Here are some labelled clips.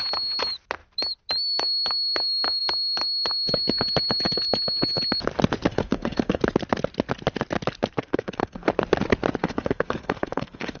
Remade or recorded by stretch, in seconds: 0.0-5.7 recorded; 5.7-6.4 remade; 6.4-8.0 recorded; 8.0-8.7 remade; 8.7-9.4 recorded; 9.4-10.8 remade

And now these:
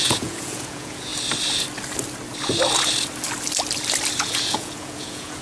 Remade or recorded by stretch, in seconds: 0.0-1.1 remade; 1.1-4.2 recorded; 4.2-5.4 remade